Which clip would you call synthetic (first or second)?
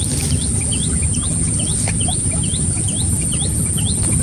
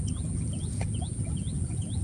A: second